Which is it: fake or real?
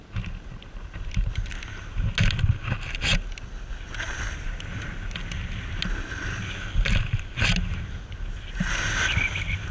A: real